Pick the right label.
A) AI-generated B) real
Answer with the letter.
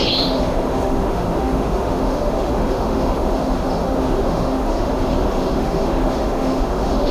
A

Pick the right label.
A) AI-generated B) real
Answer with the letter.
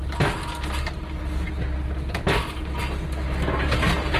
B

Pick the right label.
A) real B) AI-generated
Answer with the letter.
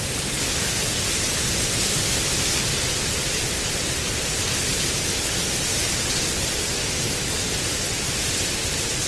A